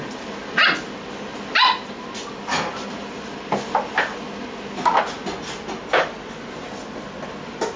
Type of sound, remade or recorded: recorded